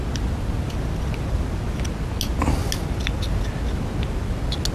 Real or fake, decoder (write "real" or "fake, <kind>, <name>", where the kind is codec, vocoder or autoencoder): real